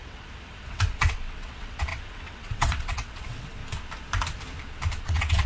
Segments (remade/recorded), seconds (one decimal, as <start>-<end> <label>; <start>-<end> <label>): 0.0-3.6 remade; 3.6-5.0 recorded; 5.0-5.5 remade